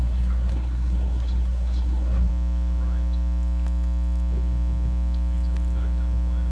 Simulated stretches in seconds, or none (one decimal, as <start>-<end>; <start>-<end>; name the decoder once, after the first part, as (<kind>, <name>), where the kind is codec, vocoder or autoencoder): 0.0-2.3 (codec, SNAC)